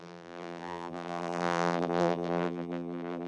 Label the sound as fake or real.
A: fake